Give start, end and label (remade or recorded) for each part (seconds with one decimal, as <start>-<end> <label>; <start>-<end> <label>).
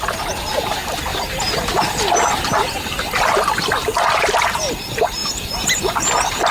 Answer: 0.0-6.5 recorded